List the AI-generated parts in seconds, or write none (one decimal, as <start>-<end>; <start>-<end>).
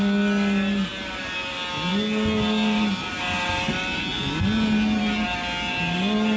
none